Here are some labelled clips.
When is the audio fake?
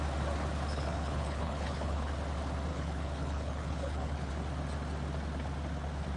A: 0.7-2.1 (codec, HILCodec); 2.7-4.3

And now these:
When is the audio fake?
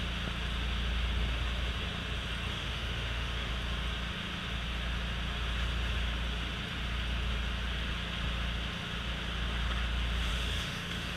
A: 2.5-3.5 (autoencoder, DAC-VAE); 10.3-11.2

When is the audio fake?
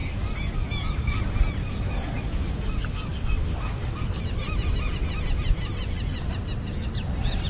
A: 0.0-1.2 (codec, DAC); 1.6-4.2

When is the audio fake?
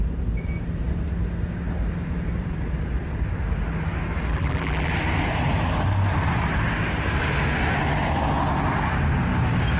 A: 4.3-4.9 (vocoder, BigVGAN v2)